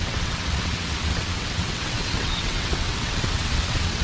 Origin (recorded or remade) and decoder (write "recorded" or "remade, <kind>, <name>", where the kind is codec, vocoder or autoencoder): remade, vocoder, WaveNeXt